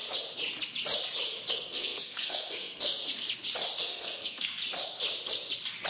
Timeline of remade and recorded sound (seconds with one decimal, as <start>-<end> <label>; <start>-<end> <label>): 0.0-1.5 recorded; 1.5-3.0 remade; 3.0-3.8 recorded; 3.8-4.6 remade; 4.6-5.9 recorded